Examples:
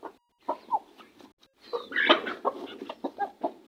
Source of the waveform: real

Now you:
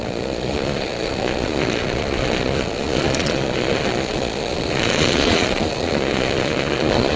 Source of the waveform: fake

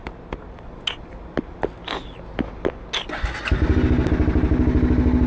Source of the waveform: real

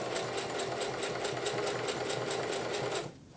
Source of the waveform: real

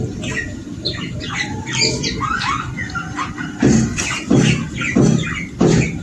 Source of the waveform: real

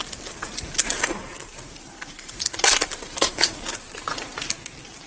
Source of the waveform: real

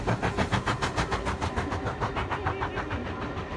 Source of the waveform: real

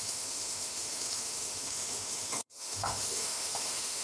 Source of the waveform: fake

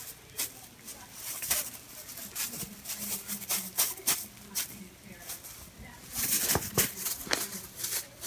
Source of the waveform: real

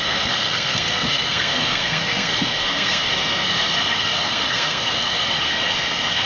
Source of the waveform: fake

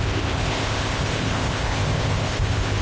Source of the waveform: fake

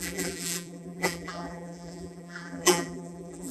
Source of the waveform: fake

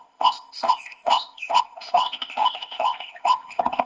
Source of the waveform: fake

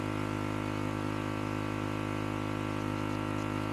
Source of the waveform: real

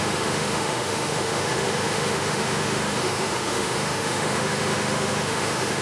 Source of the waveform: fake